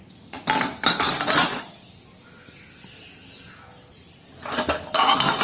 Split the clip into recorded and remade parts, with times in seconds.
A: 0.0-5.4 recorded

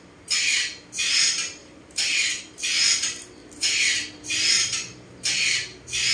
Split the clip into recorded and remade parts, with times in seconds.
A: 0.0-1.6 recorded; 1.6-2.6 remade; 2.6-3.4 recorded; 3.4-4.5 remade; 4.5-6.1 recorded